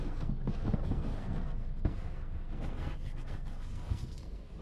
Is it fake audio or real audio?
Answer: fake